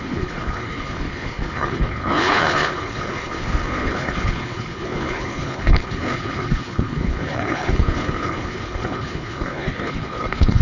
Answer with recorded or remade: remade